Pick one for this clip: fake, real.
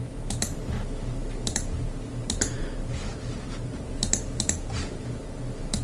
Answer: fake